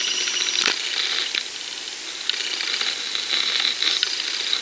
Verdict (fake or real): real